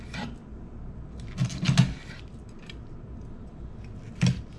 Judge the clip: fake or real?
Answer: real